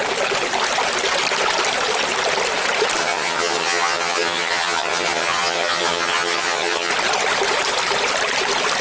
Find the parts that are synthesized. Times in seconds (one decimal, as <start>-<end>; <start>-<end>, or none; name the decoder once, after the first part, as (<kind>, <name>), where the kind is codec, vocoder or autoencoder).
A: 3.0-6.9 (vocoder, HiFi-GAN)